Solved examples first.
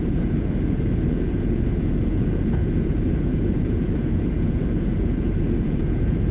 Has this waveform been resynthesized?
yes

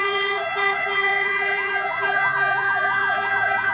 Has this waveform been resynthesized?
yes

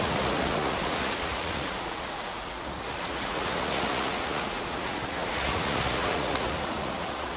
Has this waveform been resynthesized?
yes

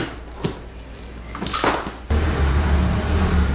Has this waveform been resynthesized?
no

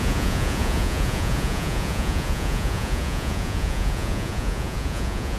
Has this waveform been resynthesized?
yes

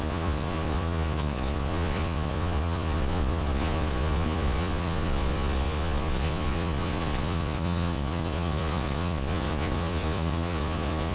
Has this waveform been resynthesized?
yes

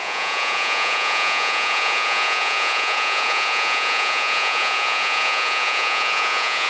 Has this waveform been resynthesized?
yes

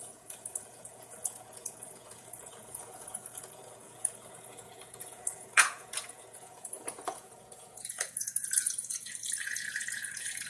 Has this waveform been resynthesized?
yes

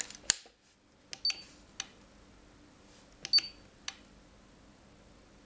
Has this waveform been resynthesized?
no